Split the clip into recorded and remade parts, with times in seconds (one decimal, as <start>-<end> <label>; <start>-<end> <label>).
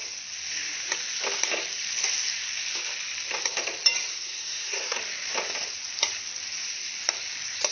0.0-4.1 recorded; 4.1-5.0 remade; 5.0-7.7 recorded